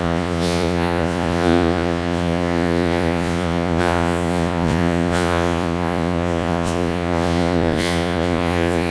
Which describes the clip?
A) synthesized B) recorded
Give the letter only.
A